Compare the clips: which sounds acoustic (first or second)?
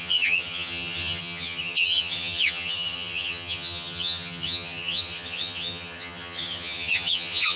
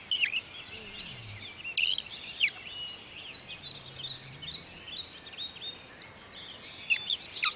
second